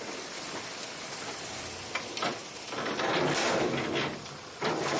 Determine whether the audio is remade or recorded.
recorded